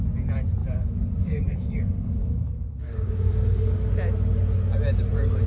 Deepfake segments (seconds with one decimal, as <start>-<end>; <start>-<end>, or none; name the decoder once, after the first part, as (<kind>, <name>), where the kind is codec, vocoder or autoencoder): 0.6-3.9 (codec, DAC)